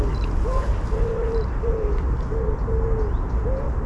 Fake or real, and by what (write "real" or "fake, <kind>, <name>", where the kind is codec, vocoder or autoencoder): real